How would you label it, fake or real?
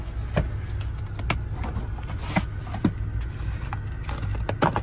real